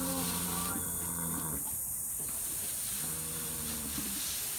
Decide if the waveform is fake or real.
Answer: fake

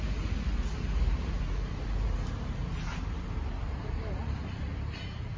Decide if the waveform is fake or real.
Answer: fake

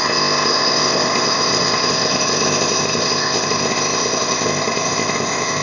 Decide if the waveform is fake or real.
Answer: fake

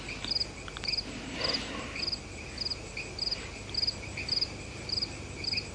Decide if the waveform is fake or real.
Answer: real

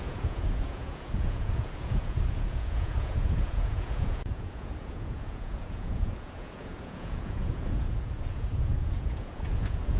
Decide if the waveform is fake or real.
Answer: fake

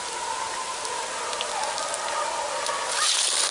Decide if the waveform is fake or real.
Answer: real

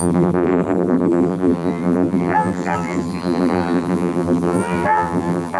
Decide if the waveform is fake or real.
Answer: fake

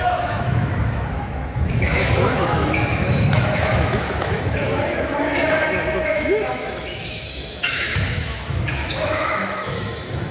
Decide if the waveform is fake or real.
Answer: fake